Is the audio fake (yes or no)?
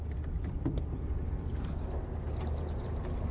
no